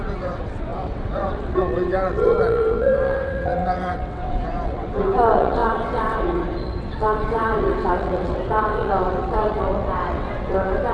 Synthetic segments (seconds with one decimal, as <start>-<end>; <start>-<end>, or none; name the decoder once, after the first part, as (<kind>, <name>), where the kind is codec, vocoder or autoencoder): 0.0-10.9 (vocoder, WaveNeXt)